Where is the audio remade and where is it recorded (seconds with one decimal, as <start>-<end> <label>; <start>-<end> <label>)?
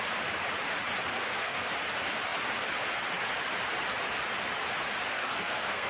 0.0-1.1 recorded; 1.1-1.7 remade; 1.7-5.1 recorded; 5.1-5.9 remade